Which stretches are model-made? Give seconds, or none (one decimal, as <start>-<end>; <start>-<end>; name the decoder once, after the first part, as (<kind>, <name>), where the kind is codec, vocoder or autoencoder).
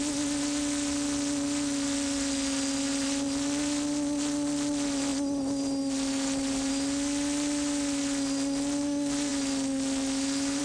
none